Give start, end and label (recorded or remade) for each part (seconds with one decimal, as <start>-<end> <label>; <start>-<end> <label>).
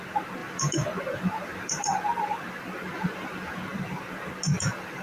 0.0-0.4 recorded; 0.4-1.0 remade; 1.0-1.5 recorded; 1.5-2.4 remade; 2.4-3.7 recorded; 3.7-4.3 remade; 4.3-5.0 recorded